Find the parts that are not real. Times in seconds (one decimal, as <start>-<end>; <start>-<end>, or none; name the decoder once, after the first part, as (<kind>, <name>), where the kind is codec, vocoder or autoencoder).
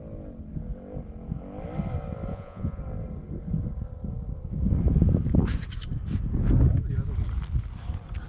2.3-2.8 (vocoder, Vocos)